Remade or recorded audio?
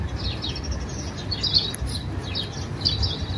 recorded